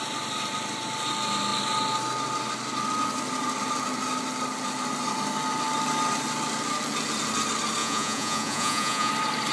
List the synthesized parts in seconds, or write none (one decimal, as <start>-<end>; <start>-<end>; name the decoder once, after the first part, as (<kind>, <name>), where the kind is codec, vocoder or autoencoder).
7.8-9.1 (vocoder, Vocos)